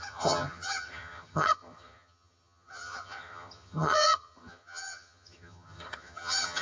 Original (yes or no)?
no